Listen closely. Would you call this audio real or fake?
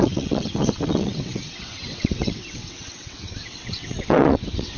fake